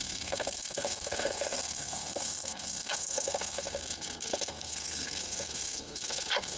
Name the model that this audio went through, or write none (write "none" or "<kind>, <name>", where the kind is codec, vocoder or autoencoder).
codec, SNAC